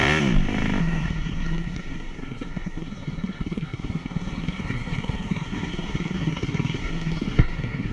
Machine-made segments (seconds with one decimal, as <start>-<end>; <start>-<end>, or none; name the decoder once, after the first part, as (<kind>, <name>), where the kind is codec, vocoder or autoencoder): 0.8-7.9 (codec, SNAC)